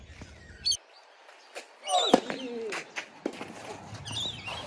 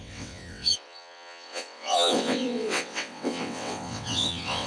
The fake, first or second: second